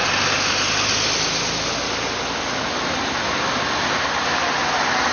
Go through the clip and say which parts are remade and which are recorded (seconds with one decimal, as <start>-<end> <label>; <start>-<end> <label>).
0.0-5.1 recorded